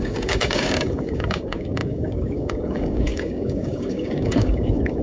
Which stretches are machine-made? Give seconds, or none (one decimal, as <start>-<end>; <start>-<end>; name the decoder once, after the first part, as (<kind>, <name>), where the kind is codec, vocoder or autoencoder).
0.0-5.0 (codec, DAC)

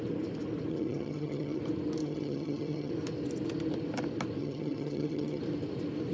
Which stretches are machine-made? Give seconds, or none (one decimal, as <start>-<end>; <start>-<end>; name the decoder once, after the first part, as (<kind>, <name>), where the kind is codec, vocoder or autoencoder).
0.7-1.6 (vocoder, HiFi-GAN); 2.0-2.9; 4.4-5.4

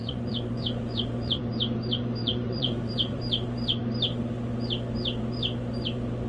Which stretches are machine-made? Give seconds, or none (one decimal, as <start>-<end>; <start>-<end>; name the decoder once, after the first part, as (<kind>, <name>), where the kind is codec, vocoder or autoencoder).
0.0-1.4 (vocoder, Vocos); 2.2-3.2

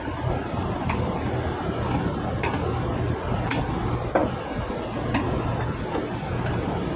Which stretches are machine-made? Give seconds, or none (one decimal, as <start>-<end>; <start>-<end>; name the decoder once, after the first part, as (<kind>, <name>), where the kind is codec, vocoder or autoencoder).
0.4-1.2 (vocoder, BigVGAN v2)